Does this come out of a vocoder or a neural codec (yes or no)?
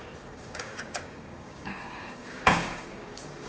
yes